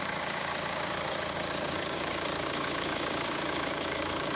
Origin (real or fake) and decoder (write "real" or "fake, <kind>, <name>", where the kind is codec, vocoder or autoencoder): fake, codec, DAC